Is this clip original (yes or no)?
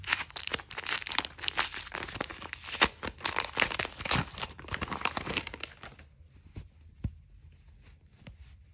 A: yes